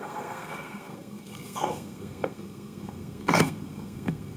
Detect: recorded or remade remade